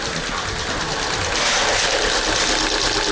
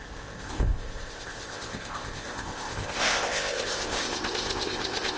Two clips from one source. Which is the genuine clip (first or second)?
first